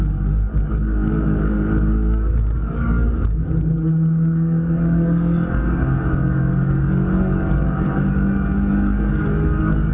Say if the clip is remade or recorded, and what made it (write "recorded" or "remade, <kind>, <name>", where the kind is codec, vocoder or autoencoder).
remade, codec, DAC